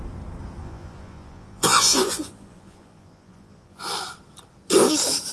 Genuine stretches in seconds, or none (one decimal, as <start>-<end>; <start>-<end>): 0.0-0.6; 3.8-5.3

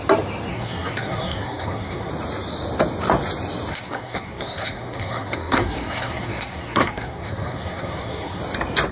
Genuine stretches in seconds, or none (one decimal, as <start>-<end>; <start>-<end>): 0.0-0.5; 2.1-3.7; 8.4-8.9